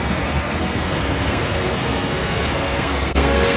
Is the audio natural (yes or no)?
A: no